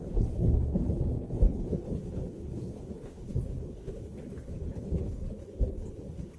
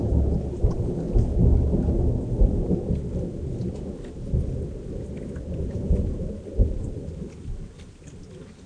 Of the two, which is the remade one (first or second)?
first